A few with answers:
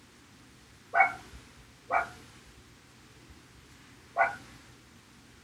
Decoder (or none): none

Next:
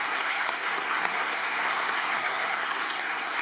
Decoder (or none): codec, SNAC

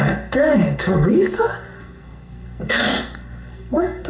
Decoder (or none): codec, SNAC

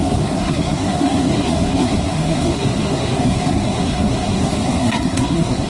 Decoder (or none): codec, SNAC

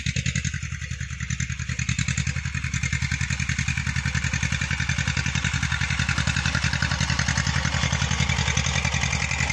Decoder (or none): none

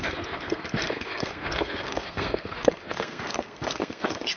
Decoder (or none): codec, SNAC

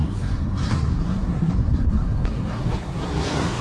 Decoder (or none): codec, SNAC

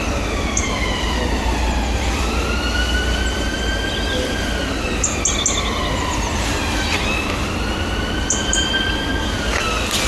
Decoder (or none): none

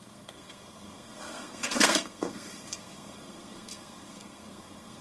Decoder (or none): codec, SNAC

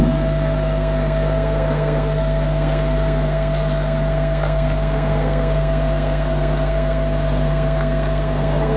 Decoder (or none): codec, SNAC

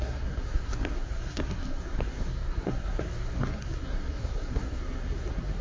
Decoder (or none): codec, SNAC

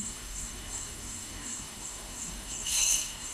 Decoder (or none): codec, SNAC